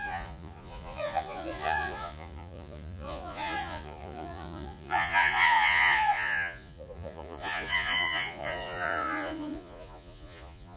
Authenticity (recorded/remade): remade